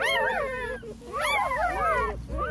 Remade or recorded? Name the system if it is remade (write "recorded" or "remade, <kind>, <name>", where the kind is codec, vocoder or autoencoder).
recorded